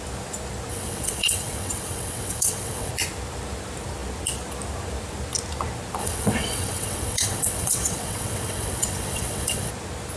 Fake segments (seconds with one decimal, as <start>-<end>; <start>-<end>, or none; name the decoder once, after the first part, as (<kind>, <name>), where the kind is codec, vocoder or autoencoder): 0.7-2.9 (vocoder, WaveNeXt); 6.0-9.7